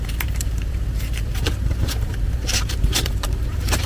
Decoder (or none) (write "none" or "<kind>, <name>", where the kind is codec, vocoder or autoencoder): vocoder, BigVGAN v2